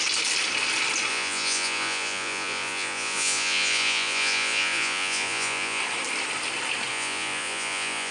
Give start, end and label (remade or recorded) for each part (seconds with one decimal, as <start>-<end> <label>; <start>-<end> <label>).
0.0-1.1 recorded; 1.1-5.8 remade; 5.8-6.9 recorded; 6.9-8.1 remade